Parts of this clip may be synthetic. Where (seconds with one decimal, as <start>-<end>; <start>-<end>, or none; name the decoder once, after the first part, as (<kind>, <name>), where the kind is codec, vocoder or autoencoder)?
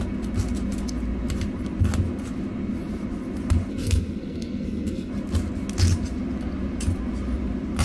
3.7-5.1 (codec, SNAC)